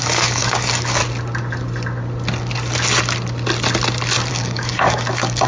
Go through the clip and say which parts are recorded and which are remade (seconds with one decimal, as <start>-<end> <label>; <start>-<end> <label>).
0.0-1.0 remade; 1.0-4.3 recorded; 4.3-5.5 remade